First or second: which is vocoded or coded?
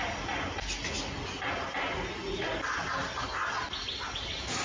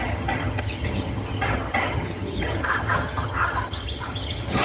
second